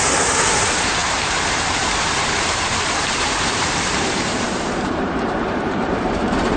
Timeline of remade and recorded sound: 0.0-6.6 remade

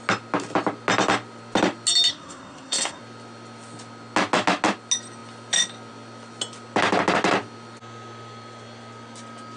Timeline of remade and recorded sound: 0.0-2.1 recorded; 2.1-3.0 remade; 3.0-9.6 recorded

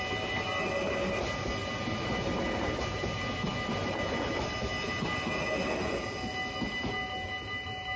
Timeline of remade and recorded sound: 0.0-8.0 recorded

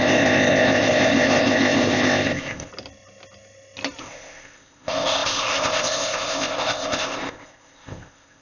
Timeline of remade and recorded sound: 0.0-2.7 remade; 2.7-4.0 recorded; 4.0-8.4 remade

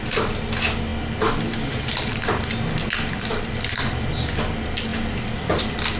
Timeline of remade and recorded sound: 0.0-6.0 recorded

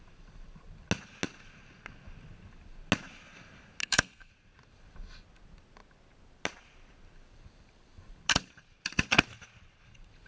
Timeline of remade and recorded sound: 0.0-3.8 recorded; 3.8-4.3 remade; 4.3-10.3 recorded

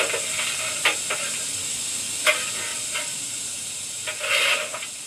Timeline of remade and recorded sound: 0.0-1.6 recorded; 1.6-2.3 remade; 2.3-5.1 recorded

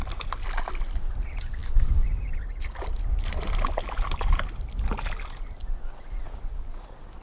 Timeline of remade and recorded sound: 0.0-7.2 recorded